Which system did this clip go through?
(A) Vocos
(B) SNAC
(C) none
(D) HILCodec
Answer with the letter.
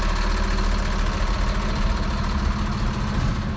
C